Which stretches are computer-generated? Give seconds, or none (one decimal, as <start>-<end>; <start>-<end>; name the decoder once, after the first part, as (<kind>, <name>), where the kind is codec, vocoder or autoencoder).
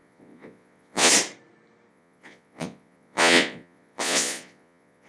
0.0-1.1 (vocoder, Vocos); 1.9-5.1